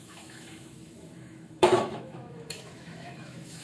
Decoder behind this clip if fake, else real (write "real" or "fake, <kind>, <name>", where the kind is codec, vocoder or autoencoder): fake, autoencoder, DAC-VAE